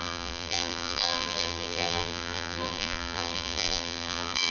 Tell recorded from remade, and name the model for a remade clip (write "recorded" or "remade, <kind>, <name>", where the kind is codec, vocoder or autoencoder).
remade, vocoder, BigVGAN v2